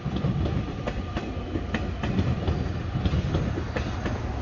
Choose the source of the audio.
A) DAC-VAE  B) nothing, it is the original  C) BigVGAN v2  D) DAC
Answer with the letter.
B